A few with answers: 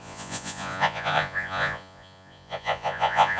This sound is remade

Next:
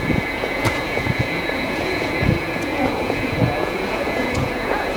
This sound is remade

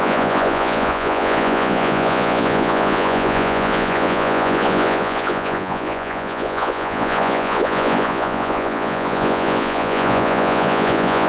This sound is remade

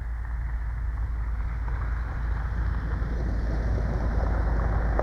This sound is recorded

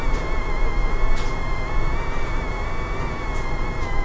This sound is recorded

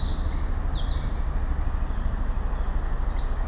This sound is recorded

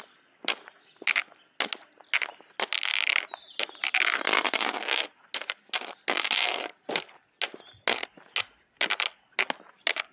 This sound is recorded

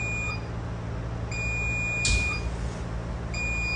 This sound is recorded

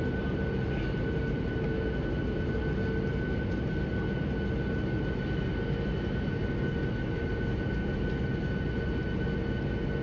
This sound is recorded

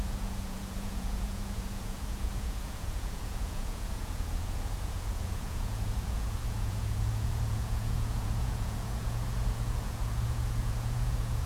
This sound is remade